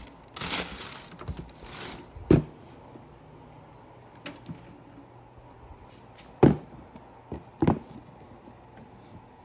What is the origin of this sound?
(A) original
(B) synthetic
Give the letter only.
A